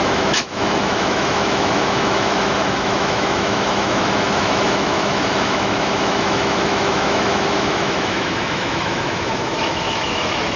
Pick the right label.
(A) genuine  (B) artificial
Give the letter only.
B